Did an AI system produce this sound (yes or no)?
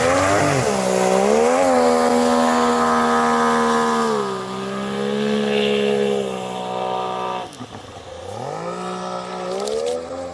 no